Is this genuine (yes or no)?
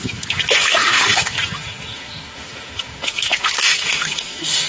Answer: no